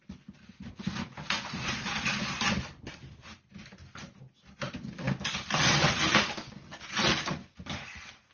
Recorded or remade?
recorded